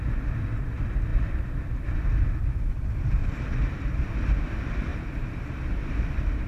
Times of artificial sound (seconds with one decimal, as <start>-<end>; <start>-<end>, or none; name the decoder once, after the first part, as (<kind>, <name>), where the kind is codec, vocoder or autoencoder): 3.2-4.1 (vocoder, BigVGAN v2); 4.9-5.7